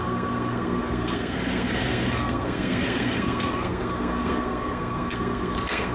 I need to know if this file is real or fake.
fake